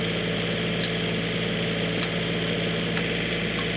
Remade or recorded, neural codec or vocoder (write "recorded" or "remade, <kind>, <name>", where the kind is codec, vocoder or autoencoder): recorded